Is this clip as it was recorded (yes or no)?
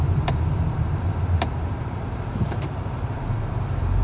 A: no